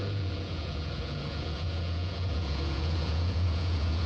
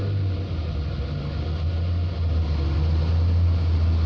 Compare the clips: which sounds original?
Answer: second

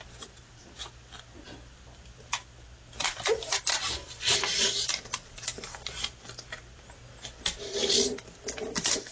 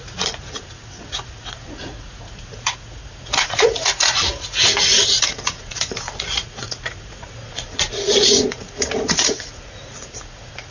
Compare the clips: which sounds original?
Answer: first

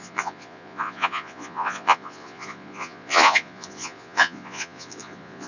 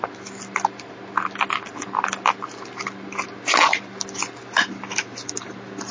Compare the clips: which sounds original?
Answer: second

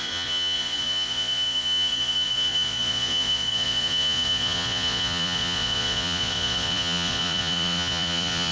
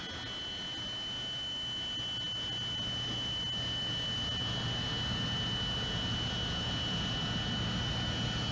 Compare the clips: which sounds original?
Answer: second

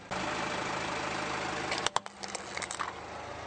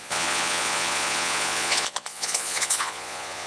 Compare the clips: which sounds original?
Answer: first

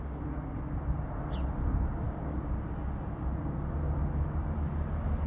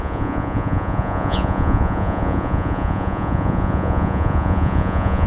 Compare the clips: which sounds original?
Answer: first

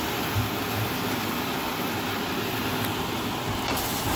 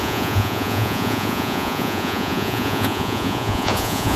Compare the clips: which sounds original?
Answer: first